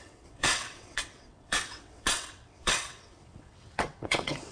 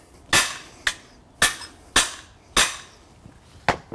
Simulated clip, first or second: first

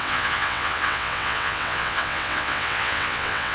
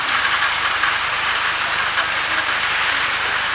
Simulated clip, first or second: first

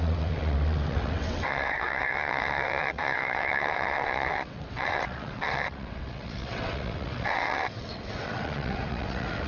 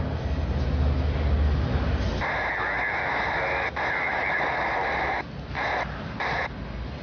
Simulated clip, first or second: first